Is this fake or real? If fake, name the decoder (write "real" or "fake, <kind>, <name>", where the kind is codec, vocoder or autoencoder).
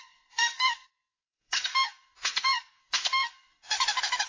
fake, codec, SNAC